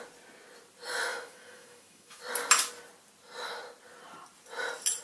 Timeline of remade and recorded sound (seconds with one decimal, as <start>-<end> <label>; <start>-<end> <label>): 0.0-1.1 recorded; 1.1-2.2 remade; 2.2-5.0 recorded